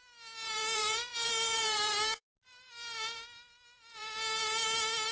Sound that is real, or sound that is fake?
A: fake